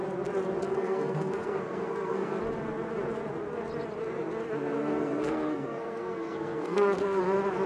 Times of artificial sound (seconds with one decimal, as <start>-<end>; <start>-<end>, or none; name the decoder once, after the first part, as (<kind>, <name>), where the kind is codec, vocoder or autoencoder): 0.6-2.4 (codec, SNAC); 5.0-7.2